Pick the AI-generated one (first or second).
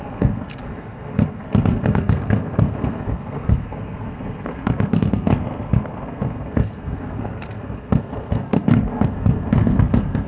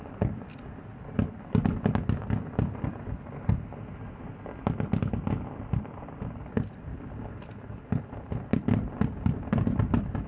first